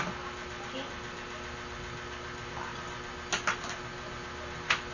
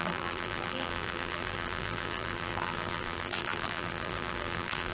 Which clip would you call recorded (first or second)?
first